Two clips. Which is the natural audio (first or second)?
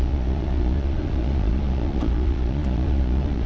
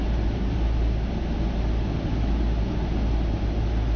second